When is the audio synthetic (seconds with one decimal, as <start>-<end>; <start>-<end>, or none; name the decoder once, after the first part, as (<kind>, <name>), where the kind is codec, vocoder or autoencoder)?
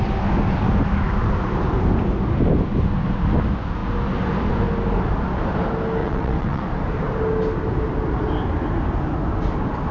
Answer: 6.0-6.6 (vocoder, WaveNeXt)